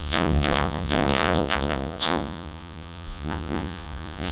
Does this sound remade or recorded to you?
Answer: remade